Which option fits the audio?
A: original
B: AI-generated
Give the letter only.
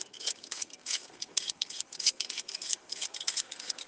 B